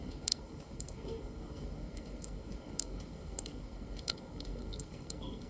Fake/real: fake